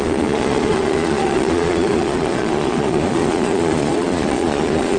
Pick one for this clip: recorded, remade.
remade